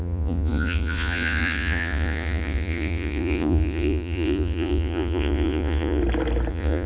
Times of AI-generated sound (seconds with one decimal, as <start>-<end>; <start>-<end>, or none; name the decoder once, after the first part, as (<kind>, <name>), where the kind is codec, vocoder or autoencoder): 0.0-6.0 (vocoder, Vocos); 6.5-6.9